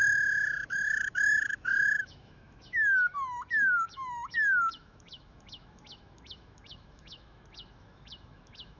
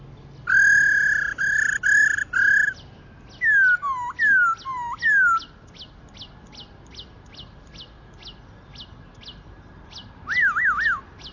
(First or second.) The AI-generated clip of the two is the first